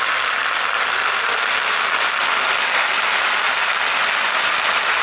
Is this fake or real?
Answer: real